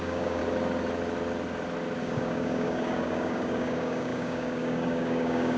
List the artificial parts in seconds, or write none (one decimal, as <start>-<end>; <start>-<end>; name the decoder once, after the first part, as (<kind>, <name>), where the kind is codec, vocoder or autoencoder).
0.0-0.4 (codec, DAC); 2.0-5.6